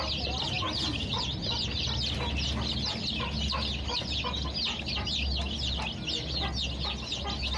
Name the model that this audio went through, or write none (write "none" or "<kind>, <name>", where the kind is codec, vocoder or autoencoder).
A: none